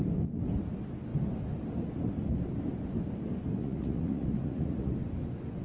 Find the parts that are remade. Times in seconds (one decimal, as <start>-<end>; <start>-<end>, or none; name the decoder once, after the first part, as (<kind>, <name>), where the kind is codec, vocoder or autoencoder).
3.6-4.9 (vocoder, Vocos)